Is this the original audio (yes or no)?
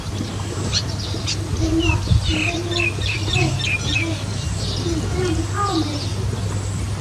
yes